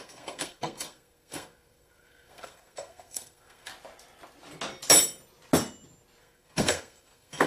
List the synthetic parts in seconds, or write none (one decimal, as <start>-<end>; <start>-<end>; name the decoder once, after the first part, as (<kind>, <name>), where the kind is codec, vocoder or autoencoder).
0.0-3.7 (codec, SNAC); 6.2-7.5